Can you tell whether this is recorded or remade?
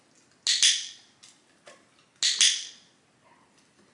recorded